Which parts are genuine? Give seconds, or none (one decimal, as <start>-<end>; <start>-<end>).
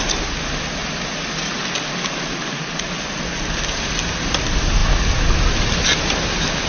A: 0.0-6.7